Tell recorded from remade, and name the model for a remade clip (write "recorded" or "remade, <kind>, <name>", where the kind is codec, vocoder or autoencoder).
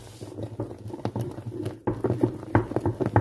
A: recorded